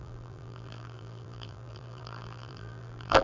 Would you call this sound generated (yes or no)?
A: yes